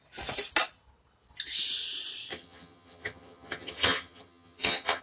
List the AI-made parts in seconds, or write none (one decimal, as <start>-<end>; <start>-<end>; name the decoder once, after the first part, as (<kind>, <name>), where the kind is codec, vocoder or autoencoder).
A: 2.3-5.0 (vocoder, HiFi-GAN)